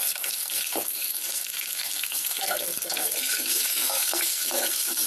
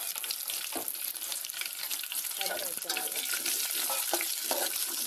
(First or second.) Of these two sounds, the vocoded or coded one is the first